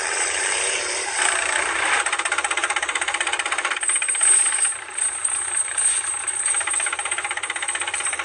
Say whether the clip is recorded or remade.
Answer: remade